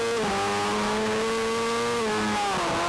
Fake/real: real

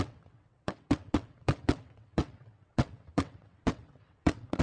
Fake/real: fake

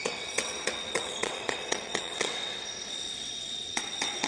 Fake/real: fake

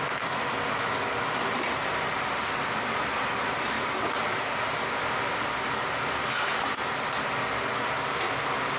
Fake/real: real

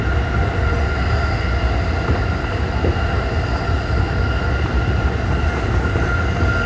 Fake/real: real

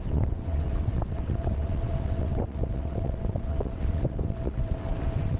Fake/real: fake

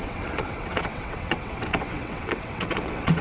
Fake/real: fake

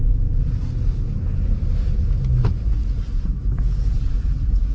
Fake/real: real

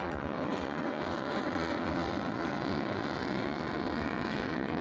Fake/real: fake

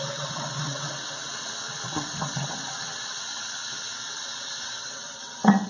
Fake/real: fake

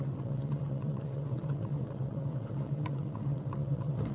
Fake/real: fake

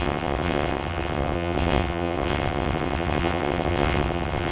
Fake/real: fake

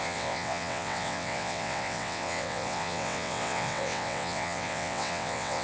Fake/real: fake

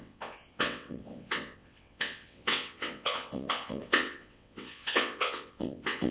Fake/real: fake